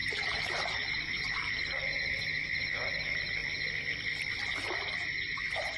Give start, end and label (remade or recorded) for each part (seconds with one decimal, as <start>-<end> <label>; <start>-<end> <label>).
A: 0.0-3.4 remade; 3.4-4.9 recorded; 4.9-5.8 remade